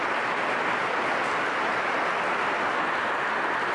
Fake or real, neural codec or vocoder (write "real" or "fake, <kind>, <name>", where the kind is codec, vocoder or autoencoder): real